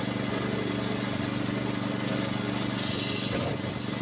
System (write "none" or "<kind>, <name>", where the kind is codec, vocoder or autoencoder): none